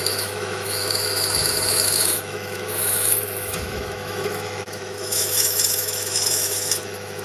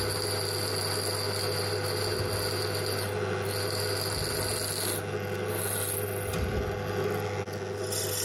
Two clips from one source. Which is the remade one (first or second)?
first